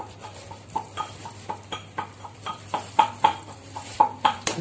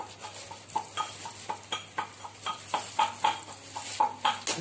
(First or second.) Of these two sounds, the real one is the second